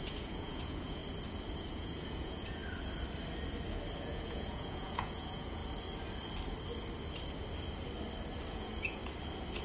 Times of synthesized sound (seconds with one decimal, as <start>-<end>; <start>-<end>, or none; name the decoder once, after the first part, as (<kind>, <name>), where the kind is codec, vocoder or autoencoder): 0.0-1.0 (vocoder, Vocos); 1.7-2.6; 4.0-5.6; 8.5-9.0